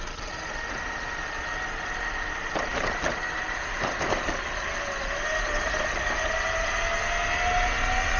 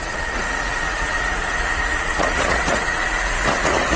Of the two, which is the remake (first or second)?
second